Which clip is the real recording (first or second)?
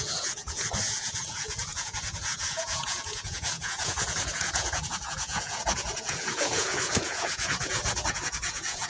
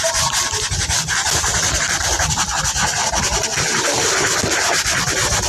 second